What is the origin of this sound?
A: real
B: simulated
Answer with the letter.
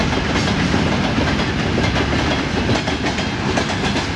A